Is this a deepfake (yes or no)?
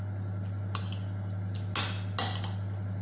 no